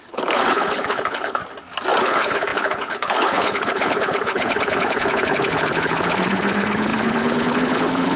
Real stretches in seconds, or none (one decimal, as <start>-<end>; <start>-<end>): 1.4-2.0